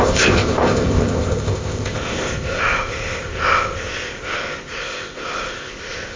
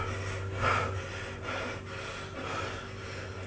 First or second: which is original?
second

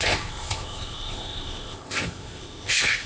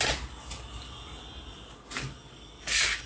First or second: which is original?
second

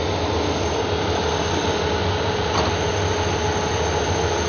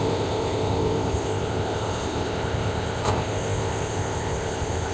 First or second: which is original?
first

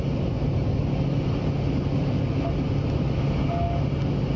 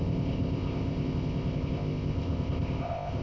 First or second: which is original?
first